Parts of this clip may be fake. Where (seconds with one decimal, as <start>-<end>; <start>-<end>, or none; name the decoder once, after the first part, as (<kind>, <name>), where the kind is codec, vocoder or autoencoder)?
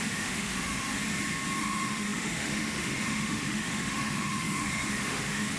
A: 0.0-1.0 (autoencoder, DAC-VAE); 1.6-5.6